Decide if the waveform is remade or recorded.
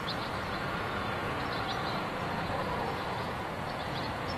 remade